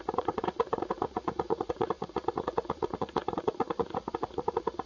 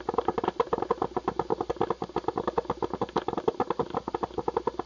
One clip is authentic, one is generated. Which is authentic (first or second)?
second